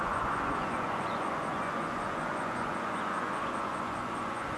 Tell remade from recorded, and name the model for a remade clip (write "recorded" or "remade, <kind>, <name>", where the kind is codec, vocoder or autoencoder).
remade, vocoder, Vocos